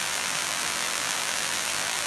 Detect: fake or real fake